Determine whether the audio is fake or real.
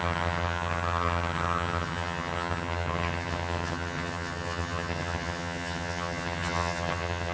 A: fake